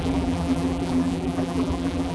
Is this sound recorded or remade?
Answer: remade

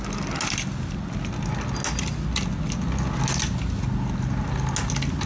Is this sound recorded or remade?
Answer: recorded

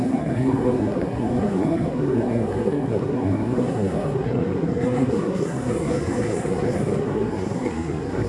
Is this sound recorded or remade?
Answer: remade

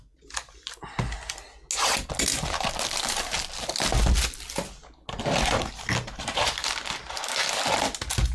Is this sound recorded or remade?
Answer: recorded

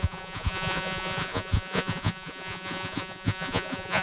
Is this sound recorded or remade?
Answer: remade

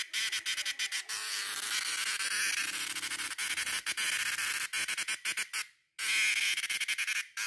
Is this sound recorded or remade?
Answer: recorded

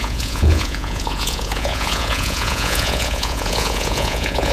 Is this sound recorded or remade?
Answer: remade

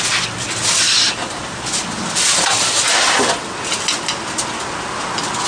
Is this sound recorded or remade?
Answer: recorded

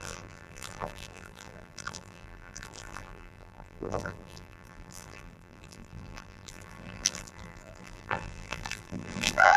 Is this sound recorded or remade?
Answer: remade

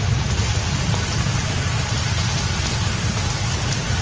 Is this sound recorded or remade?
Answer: recorded